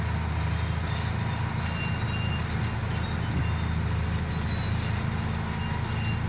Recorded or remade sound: recorded